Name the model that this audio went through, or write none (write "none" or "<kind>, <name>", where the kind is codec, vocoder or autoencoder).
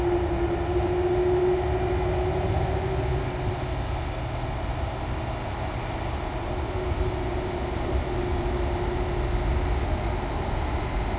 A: none